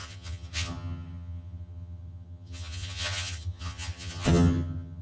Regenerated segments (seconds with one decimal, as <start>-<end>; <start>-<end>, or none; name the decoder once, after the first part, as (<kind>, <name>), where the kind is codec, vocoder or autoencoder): 0.0-5.0 (vocoder, HiFi-GAN)